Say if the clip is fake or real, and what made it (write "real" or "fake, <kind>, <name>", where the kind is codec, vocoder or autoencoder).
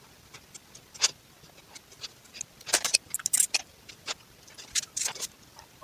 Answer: real